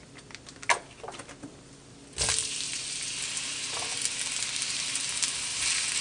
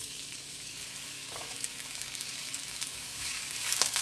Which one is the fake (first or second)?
second